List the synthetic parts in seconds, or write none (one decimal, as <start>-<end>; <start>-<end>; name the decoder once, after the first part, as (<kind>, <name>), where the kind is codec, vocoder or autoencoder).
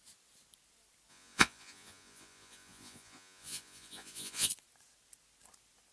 1.1-4.5 (vocoder, Vocos)